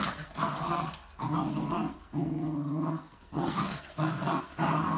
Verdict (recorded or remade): remade